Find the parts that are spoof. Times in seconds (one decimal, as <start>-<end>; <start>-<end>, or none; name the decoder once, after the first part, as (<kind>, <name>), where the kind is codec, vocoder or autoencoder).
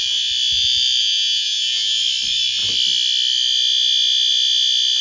1.0-2.0 (vocoder, Vocos)